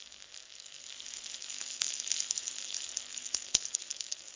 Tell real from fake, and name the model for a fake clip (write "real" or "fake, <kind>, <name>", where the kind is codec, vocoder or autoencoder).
fake, codec, SNAC